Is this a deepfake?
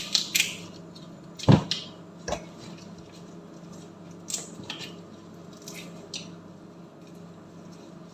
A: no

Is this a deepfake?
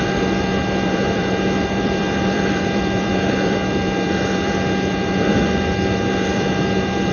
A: yes